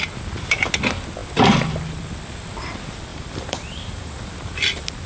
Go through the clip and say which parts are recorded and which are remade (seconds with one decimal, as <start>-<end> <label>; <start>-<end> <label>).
0.0-3.1 recorded; 3.1-4.2 remade; 4.2-5.1 recorded